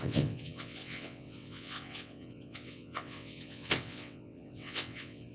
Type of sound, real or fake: fake